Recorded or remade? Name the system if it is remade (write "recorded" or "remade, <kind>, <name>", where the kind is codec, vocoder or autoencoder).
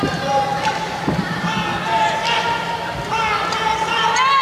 recorded